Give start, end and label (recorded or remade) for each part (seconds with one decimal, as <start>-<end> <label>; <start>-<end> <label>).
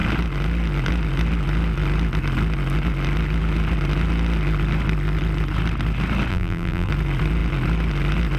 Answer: 0.0-6.3 recorded; 6.3-6.9 remade; 6.9-8.4 recorded